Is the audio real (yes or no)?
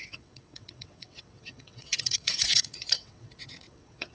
no